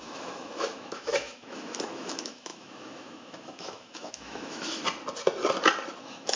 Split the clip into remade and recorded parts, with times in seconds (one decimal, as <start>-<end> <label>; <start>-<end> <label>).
0.0-4.8 remade; 4.8-6.0 recorded; 6.0-6.4 remade